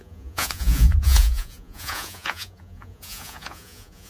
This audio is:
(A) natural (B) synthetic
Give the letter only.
B